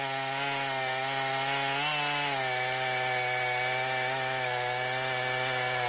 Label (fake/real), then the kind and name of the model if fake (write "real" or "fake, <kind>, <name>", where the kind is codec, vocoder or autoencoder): real